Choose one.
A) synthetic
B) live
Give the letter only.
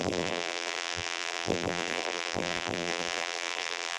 A